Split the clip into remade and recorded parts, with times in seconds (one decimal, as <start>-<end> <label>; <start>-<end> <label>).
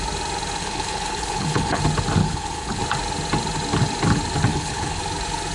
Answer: 0.0-0.6 recorded; 0.6-1.8 remade; 1.8-2.2 recorded; 2.2-2.8 remade; 2.8-4.5 recorded; 4.5-5.0 remade; 5.0-5.5 recorded